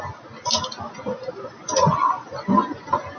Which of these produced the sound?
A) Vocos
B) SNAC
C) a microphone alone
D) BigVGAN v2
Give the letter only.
C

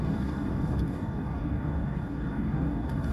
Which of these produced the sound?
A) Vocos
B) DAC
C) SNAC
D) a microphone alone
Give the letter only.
B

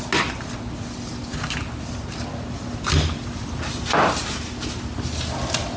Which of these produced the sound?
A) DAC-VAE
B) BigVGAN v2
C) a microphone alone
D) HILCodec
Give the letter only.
C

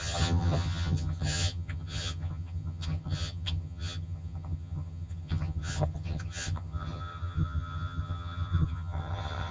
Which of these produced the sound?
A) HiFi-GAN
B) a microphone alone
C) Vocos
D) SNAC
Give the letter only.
A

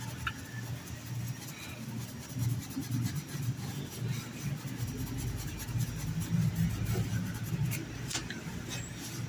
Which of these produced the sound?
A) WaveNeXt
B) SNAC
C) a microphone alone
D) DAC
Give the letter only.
C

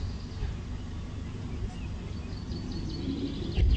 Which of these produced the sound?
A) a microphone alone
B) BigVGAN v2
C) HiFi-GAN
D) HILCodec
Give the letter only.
A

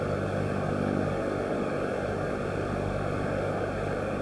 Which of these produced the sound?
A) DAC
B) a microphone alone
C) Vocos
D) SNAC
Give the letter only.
A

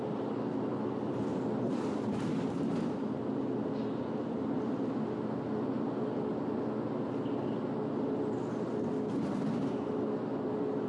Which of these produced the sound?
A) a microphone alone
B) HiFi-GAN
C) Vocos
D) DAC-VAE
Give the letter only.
A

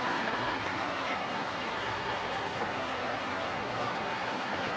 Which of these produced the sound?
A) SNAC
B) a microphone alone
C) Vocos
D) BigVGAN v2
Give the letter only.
A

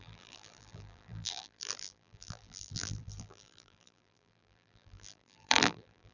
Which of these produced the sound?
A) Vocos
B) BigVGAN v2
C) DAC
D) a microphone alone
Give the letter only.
B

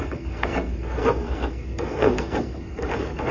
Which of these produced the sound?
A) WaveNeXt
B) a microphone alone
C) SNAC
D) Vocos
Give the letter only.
C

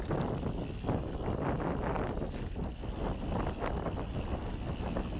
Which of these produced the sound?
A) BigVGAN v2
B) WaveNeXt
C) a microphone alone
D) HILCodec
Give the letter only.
C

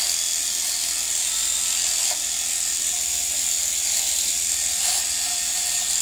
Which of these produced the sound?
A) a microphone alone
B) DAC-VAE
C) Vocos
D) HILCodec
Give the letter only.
A